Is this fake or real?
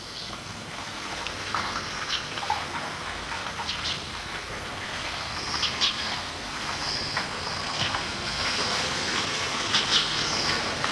fake